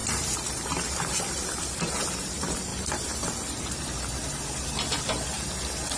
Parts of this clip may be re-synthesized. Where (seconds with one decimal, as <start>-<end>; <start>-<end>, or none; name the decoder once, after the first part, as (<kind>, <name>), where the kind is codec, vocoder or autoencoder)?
0.0-1.3 (vocoder, BigVGAN v2); 2.7-4.5